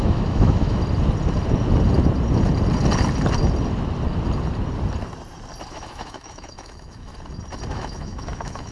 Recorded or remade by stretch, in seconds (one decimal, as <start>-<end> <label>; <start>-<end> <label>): 0.0-0.8 remade; 0.8-5.7 recorded; 5.7-7.1 remade; 7.1-7.7 recorded; 7.7-8.7 remade